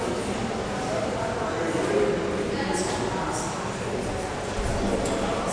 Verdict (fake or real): real